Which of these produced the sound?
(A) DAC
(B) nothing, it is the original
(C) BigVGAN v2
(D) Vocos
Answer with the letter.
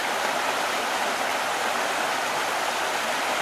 B